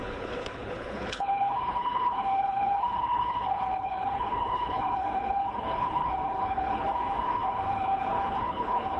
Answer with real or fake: fake